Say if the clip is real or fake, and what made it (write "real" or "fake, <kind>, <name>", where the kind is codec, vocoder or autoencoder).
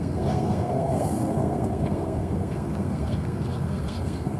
fake, codec, SNAC